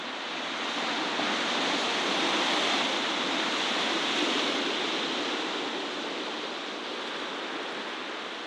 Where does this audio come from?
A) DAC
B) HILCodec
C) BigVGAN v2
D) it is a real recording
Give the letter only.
D